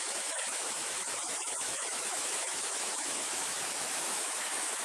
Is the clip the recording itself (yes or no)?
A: no